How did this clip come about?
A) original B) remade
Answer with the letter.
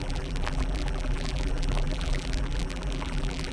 B